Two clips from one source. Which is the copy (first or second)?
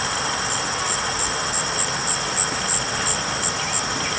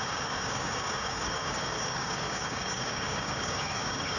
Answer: second